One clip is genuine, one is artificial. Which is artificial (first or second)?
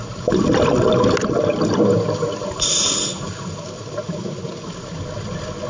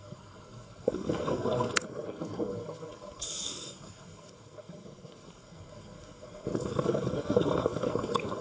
second